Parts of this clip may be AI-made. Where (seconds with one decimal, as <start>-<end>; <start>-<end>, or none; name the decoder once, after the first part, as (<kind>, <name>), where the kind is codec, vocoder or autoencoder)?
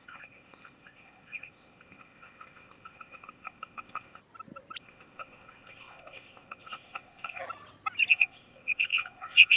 0.0-4.2 (codec, ZipCodec); 4.8-7.4; 8.1-9.6